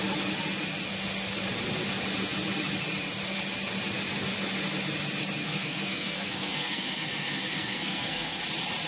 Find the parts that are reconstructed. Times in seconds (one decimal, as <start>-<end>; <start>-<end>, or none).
5.4-8.4